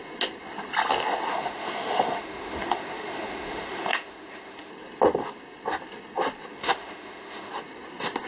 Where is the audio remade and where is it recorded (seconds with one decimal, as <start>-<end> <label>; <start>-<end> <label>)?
0.0-1.3 recorded; 1.3-4.7 remade; 4.7-6.6 recorded; 6.6-7.5 remade; 7.5-8.3 recorded